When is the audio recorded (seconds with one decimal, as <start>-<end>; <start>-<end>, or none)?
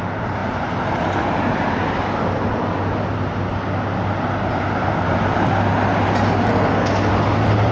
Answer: 0.0-6.5; 7.1-7.7